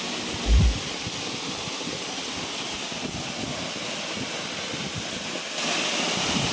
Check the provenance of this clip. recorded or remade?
recorded